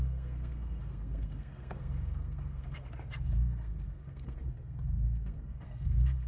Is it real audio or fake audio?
fake